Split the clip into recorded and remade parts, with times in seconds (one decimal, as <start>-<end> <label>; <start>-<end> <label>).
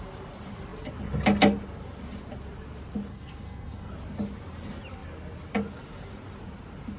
0.0-3.1 recorded; 3.1-3.9 remade; 3.9-7.0 recorded